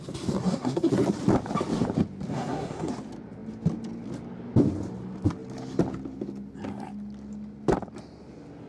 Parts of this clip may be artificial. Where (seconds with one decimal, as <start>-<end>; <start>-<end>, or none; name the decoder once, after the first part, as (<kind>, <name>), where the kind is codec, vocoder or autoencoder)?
0.4-0.9 (codec, SNAC); 2.3-2.9